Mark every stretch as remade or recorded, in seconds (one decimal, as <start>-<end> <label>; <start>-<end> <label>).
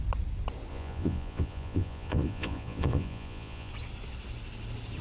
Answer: 0.0-0.7 recorded; 0.7-3.7 remade; 3.7-5.0 recorded